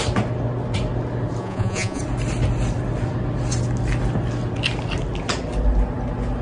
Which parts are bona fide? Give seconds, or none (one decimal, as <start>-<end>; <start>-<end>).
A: 0.0-1.4; 2.0-6.4